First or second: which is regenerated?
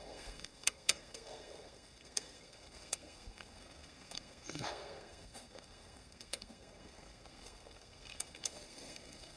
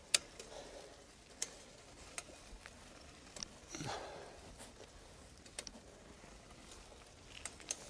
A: first